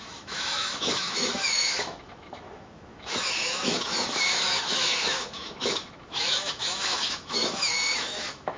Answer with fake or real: fake